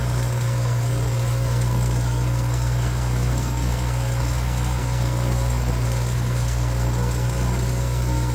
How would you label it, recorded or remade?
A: remade